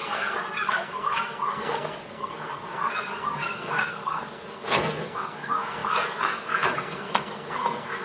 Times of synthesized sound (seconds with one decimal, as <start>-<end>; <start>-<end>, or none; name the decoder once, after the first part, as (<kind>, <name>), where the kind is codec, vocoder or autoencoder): 0.0-8.0 (codec, SNAC)